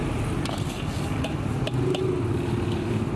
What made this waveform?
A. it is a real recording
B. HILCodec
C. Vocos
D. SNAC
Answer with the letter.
A